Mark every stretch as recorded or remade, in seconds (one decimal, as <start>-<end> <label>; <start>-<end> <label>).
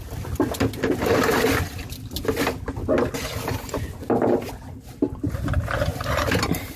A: 0.0-6.8 recorded